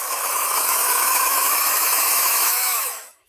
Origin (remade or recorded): remade